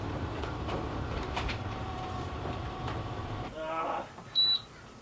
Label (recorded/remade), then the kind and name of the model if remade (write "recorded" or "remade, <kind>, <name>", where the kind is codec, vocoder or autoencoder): remade, vocoder, BigVGAN v2